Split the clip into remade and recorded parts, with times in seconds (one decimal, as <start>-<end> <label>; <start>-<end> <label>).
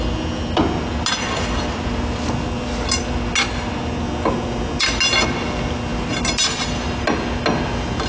0.0-8.1 recorded